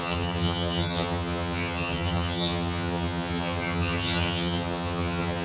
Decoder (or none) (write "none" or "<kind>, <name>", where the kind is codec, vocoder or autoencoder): vocoder, HiFi-GAN